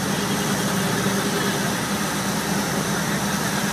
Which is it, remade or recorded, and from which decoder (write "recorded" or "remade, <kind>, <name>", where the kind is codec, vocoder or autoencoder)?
recorded